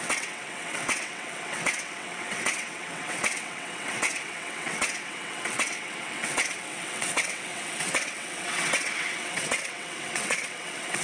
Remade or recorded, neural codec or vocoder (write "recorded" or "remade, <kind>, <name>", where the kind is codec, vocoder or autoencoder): remade, vocoder, WaveNeXt